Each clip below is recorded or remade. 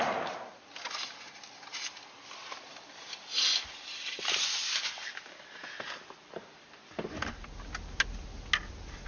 recorded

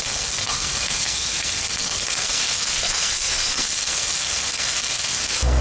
remade